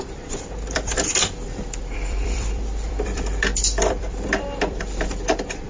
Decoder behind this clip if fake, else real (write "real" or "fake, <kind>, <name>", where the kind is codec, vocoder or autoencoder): fake, vocoder, BigVGAN v2